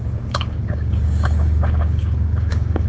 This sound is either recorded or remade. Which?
remade